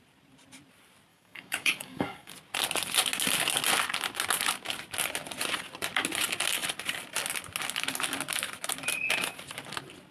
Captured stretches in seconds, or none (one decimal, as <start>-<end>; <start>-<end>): 0.0-1.1; 2.3-10.1